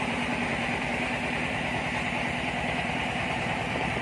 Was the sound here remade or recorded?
remade